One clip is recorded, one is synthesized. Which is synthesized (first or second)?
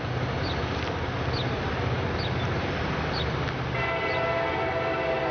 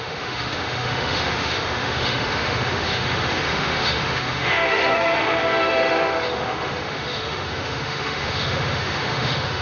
second